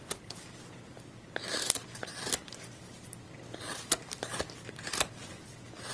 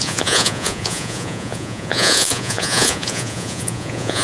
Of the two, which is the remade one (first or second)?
second